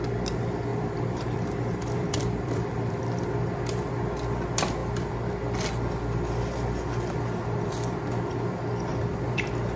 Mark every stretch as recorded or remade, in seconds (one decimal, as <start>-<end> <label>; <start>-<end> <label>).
0.0-0.7 recorded; 0.7-3.0 remade; 3.0-8.9 recorded; 8.9-9.8 remade